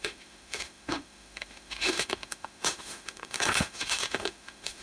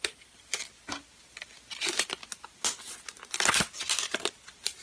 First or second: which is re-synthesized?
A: first